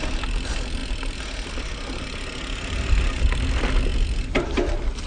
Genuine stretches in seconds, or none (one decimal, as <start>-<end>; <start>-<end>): 0.0-5.1